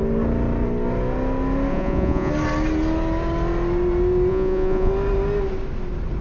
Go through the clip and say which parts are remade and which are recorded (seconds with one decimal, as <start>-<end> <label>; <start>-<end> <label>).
0.0-1.7 recorded; 1.7-2.3 remade; 2.3-4.3 recorded; 4.3-4.9 remade; 4.9-6.2 recorded